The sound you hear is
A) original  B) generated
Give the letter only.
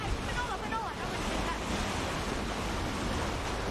B